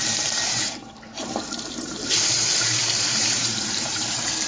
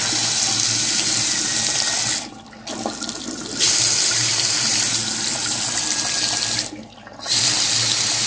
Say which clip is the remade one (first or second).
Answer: first